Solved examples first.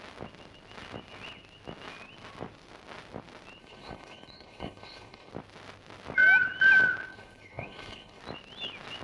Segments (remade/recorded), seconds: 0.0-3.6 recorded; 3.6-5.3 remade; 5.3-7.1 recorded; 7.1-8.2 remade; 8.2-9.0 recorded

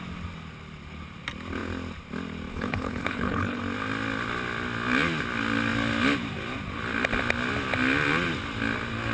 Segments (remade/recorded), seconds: 0.0-2.5 recorded; 2.5-3.6 remade; 3.6-9.1 recorded

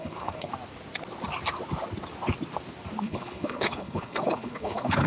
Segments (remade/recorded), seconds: 0.0-0.5 remade; 0.5-3.0 recorded; 3.0-5.1 remade

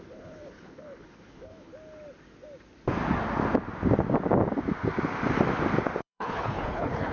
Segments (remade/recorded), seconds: 0.0-1.7 remade; 1.7-6.0 recorded; 6.0-7.1 remade

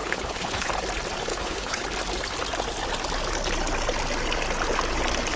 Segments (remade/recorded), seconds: 0.0-0.7 remade; 0.7-1.3 recorded; 1.3-1.8 remade; 1.8-5.4 recorded

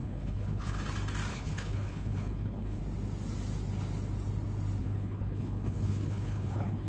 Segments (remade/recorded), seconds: 0.0-0.8 remade; 0.8-1.3 recorded; 1.3-2.8 remade; 2.8-4.8 recorded; 4.8-6.9 remade